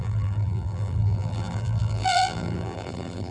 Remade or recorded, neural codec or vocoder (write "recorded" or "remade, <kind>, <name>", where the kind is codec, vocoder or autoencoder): remade, vocoder, BigVGAN v2